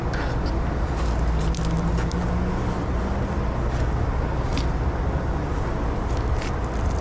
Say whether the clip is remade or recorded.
recorded